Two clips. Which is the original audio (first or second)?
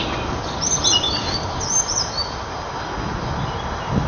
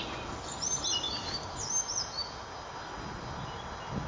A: second